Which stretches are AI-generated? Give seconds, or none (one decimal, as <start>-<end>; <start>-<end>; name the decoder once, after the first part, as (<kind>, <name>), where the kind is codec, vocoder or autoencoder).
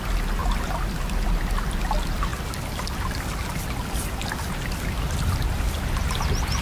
none